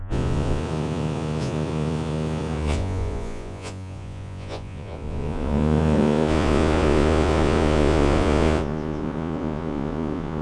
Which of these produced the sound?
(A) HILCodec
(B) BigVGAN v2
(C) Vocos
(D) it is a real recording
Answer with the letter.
C